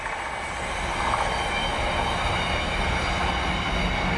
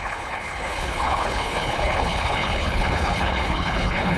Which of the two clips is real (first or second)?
first